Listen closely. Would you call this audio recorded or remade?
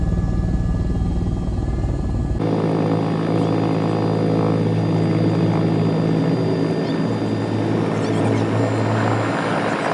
recorded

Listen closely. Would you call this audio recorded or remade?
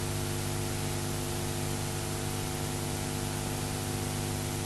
recorded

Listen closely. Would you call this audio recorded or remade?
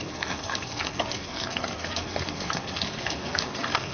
remade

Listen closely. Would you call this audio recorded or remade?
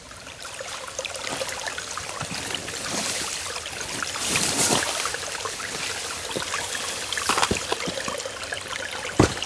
recorded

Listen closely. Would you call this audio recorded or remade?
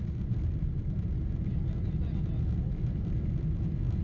recorded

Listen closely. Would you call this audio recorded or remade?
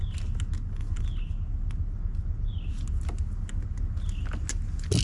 recorded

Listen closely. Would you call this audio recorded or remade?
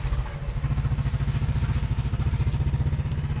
recorded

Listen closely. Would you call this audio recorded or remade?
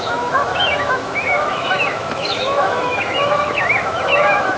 remade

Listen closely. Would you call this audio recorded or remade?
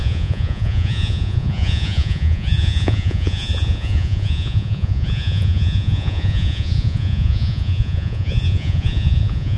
remade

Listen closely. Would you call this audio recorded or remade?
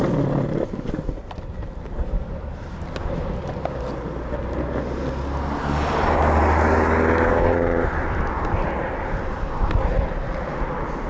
recorded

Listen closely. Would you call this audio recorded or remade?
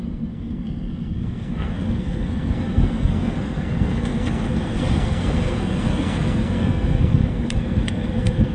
remade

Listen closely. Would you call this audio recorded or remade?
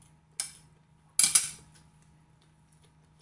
recorded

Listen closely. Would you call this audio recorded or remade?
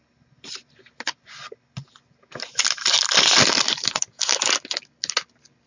recorded